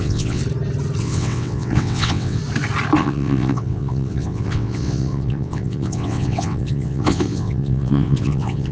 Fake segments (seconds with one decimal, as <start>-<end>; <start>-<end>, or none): 0.0-0.4; 1.0-2.4; 3.0-8.7